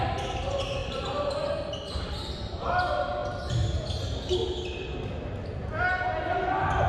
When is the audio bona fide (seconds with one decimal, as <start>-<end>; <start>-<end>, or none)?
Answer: 0.0-6.9